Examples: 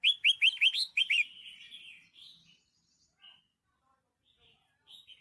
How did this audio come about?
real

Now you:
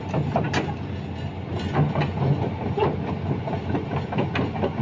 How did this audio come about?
real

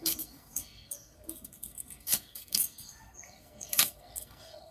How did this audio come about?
fake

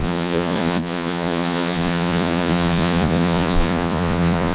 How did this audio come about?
fake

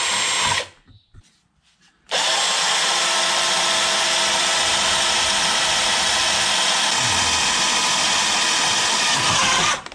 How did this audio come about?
real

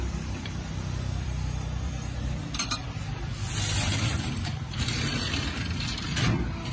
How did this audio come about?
fake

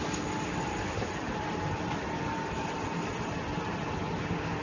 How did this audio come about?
real